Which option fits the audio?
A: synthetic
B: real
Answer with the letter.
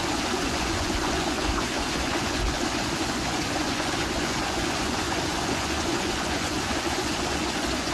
A